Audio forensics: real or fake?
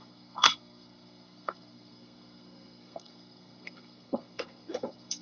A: fake